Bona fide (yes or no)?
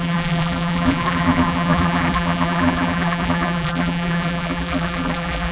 no